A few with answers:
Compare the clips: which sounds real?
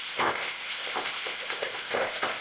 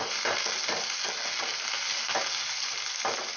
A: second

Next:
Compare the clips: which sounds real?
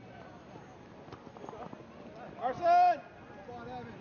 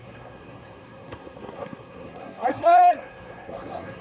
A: first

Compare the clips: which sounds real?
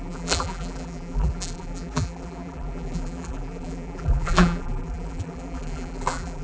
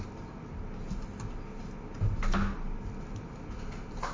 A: second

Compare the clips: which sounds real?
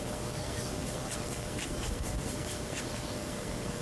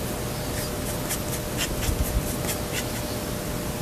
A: second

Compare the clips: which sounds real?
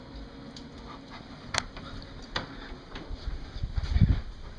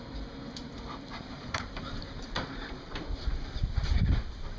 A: first